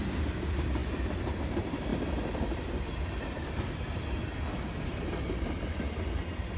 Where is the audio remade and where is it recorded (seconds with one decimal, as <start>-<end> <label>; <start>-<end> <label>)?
0.0-0.8 recorded; 0.8-1.4 remade; 1.4-1.9 recorded; 1.9-2.8 remade; 2.8-6.6 recorded